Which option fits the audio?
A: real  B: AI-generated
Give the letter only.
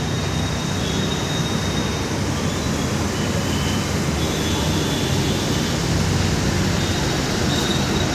A